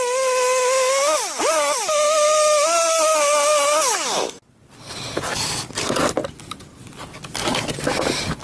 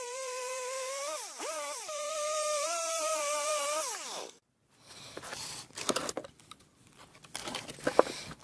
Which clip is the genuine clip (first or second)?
first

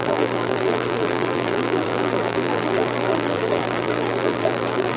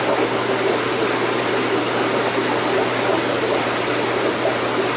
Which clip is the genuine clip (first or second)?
second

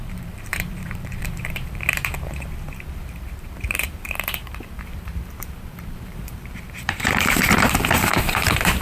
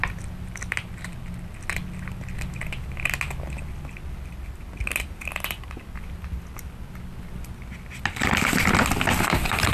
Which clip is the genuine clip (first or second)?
second